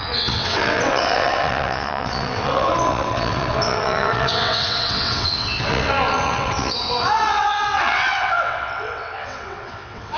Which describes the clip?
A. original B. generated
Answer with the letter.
B